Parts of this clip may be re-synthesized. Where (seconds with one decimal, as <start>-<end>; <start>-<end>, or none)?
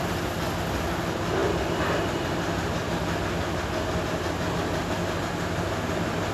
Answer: none